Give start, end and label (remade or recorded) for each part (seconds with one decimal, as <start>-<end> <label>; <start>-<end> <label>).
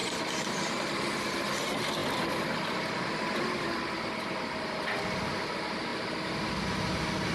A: 0.0-7.3 recorded